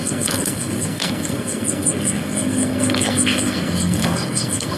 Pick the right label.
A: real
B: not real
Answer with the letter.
B